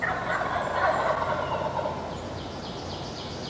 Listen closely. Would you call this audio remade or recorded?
recorded